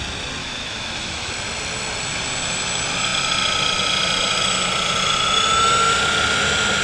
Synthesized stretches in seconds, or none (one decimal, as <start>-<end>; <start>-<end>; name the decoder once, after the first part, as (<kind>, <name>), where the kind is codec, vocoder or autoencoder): 0.4-1.3 (autoencoder, DAC-VAE)